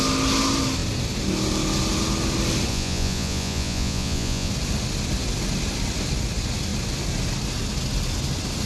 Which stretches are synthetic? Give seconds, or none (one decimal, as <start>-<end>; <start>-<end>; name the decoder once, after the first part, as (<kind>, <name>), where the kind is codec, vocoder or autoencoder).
2.7-4.5 (vocoder, Vocos)